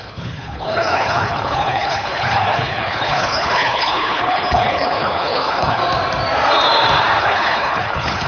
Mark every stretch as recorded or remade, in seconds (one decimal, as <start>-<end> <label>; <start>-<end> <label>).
0.0-5.8 remade; 5.8-7.2 recorded; 7.2-8.3 remade